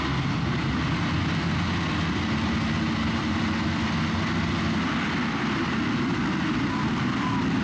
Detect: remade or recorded recorded